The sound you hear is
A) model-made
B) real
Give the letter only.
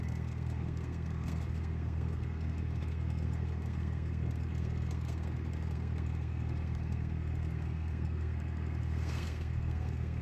A